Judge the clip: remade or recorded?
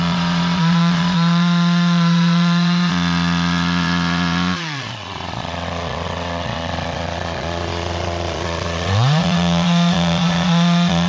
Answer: remade